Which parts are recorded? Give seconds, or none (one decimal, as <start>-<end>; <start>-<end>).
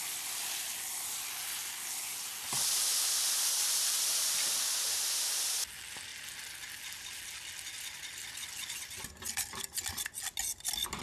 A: 0.0-11.0